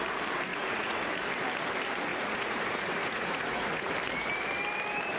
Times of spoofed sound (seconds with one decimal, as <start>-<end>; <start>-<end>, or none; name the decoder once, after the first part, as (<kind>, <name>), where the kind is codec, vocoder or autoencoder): 0.5-1.1 (vocoder, Vocos); 2.1-3.9